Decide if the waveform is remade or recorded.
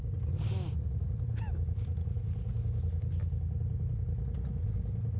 recorded